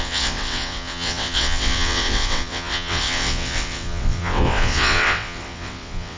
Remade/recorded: remade